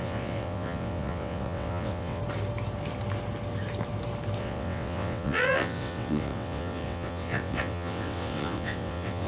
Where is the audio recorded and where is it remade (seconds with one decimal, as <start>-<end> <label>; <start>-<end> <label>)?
0.0-2.2 remade; 2.2-4.4 recorded; 4.4-9.3 remade